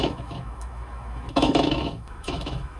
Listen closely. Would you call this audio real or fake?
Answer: fake